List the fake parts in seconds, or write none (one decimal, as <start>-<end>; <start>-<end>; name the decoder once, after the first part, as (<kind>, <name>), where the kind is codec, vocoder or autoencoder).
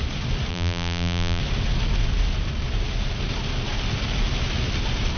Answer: 0.5-1.4 (vocoder, BigVGAN v2)